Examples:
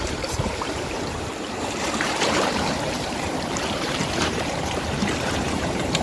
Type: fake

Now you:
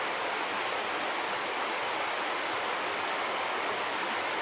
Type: real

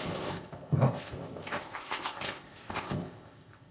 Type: fake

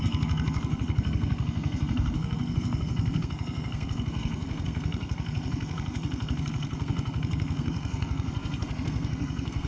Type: fake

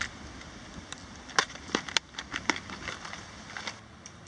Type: real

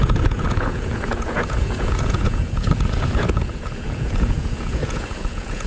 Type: fake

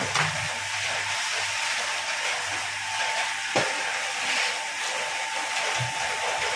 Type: real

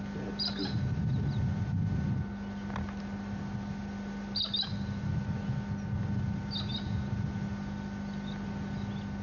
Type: real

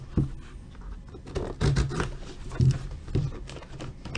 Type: real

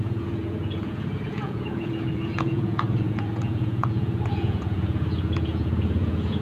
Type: fake